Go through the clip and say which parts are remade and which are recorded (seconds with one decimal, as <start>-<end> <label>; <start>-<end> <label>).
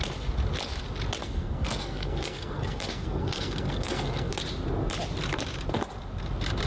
0.0-1.2 recorded; 1.2-4.3 remade; 4.3-6.7 recorded